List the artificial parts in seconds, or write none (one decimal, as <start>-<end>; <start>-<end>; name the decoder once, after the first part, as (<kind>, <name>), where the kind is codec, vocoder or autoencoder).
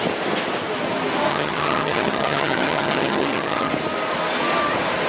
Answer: 1.3-3.7 (vocoder, HiFi-GAN)